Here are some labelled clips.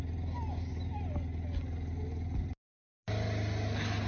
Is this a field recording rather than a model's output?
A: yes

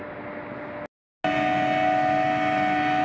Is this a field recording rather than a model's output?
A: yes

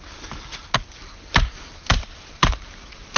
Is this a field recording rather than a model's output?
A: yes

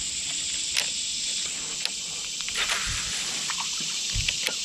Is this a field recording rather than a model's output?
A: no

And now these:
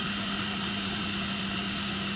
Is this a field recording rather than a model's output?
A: yes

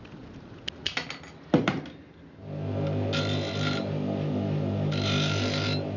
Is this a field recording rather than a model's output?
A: yes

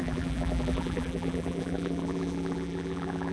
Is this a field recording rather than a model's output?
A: no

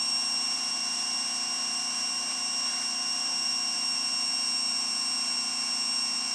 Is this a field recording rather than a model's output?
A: no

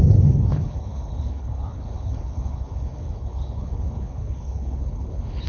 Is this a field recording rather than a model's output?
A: no